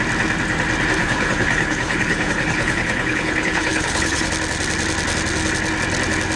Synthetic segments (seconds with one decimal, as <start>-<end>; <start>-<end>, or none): 1.0-4.3